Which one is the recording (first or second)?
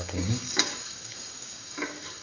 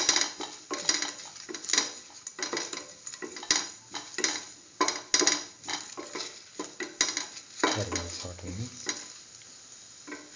second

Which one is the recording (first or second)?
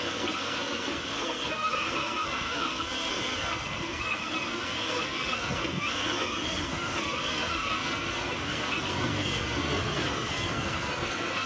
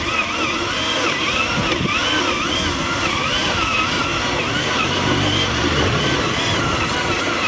second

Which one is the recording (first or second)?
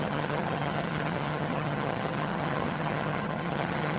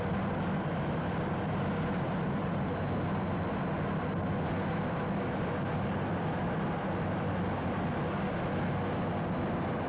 second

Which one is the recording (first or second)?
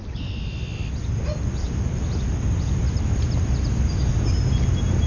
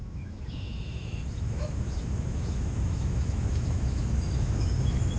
first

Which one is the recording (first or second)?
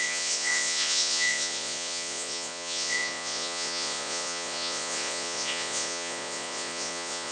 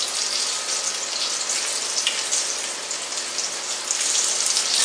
second